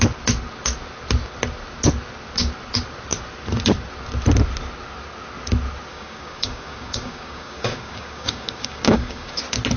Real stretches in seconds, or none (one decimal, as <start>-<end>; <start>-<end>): 0.0-5.9; 9.4-9.8